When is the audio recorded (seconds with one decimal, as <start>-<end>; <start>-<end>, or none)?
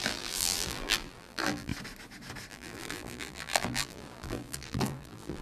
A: 1.7-2.5